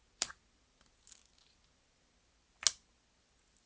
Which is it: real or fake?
real